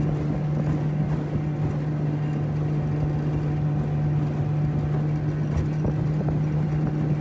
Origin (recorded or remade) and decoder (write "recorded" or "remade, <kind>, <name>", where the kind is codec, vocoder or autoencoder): recorded